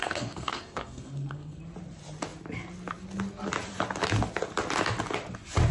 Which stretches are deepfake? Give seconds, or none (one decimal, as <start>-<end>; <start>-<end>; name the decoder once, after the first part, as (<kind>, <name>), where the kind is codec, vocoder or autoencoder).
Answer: 0.0-1.6 (codec, SNAC)